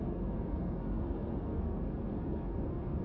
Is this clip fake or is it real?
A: fake